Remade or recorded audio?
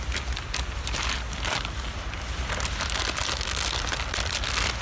recorded